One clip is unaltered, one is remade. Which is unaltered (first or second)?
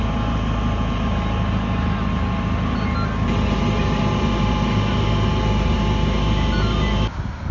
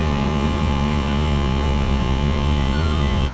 first